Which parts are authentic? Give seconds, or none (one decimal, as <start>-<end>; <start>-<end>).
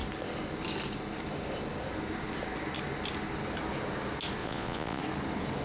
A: 0.0-4.4; 5.0-5.6